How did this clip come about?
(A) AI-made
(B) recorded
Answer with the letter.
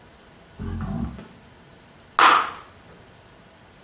B